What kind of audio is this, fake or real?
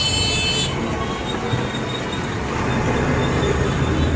real